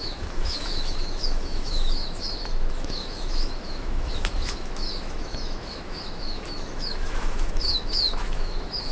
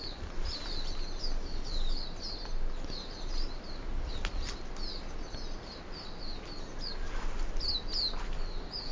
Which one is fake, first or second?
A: first